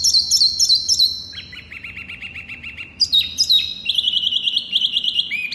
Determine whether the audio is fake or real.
fake